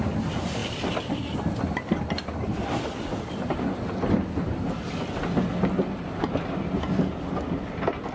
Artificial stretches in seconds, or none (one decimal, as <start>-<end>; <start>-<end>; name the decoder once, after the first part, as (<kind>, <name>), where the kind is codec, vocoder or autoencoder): none